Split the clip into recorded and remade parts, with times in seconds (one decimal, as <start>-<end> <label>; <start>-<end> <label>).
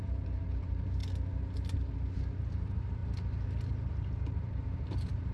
0.0-1.0 remade; 1.0-2.4 recorded; 2.4-3.0 remade; 3.0-3.9 recorded; 3.9-5.3 remade